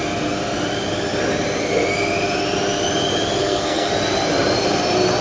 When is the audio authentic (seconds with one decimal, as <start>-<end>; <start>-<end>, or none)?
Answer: 0.0-3.4; 3.9-5.2